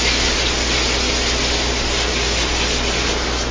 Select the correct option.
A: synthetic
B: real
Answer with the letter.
B